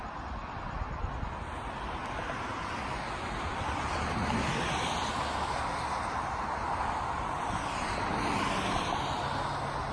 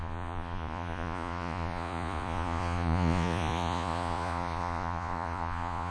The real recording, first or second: first